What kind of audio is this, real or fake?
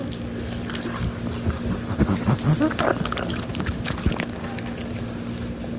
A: real